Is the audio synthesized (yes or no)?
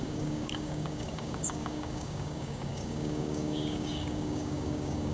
yes